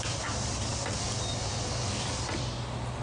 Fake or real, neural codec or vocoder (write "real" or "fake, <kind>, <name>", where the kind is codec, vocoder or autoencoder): real